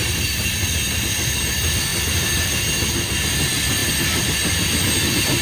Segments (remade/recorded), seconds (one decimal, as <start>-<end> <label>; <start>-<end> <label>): 0.0-5.4 recorded